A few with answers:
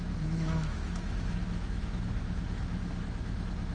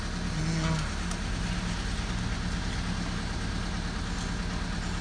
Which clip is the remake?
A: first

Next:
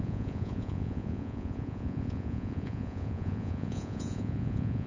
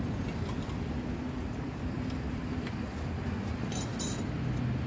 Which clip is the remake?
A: first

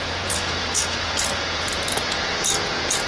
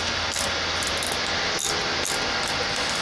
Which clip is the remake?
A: first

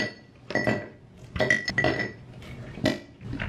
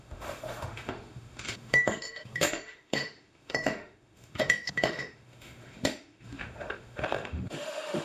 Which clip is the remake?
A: second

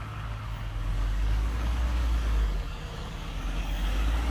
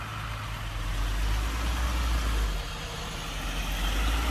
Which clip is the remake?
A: first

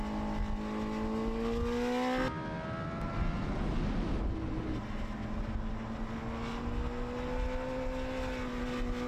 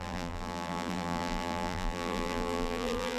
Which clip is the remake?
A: second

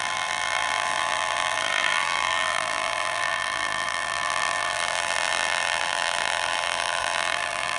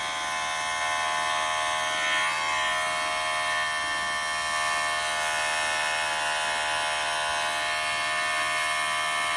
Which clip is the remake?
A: first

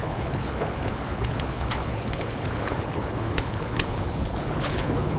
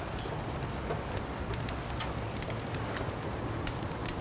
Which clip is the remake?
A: first